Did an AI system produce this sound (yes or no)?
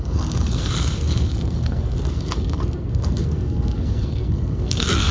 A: yes